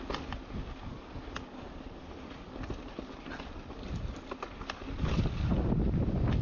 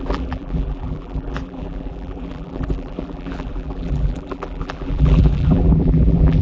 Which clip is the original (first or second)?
first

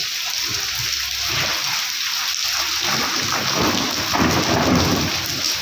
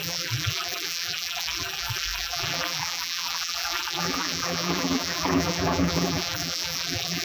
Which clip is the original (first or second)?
first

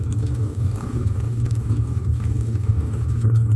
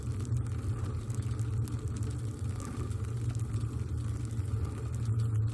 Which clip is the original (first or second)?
second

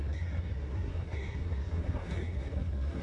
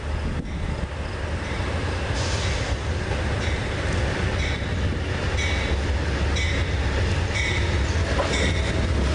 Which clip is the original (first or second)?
second